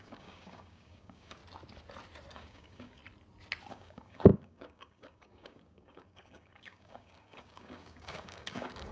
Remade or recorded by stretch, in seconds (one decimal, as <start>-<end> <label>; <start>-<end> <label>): 0.0-1.4 remade; 1.4-2.3 recorded; 2.3-3.0 remade; 3.0-3.7 recorded; 3.7-8.9 remade